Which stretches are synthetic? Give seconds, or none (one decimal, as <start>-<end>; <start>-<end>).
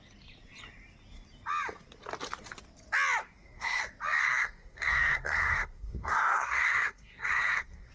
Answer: 3.2-3.8; 4.2-7.9